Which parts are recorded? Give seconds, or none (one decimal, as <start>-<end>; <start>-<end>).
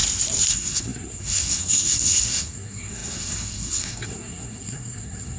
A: 0.0-0.5